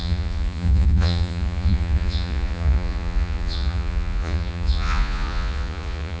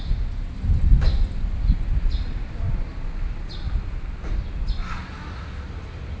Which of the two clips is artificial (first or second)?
first